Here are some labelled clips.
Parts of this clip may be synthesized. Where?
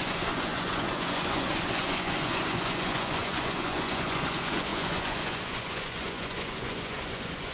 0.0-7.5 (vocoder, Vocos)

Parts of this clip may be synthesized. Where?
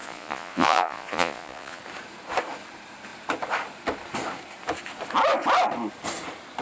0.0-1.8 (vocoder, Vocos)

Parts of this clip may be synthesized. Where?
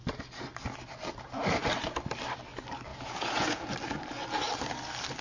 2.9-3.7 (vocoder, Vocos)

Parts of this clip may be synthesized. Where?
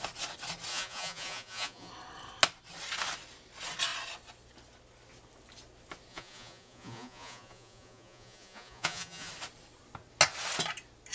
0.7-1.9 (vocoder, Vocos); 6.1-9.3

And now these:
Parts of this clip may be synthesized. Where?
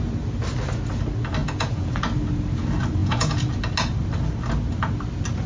1.4-1.9 (vocoder, Vocos); 3.0-3.5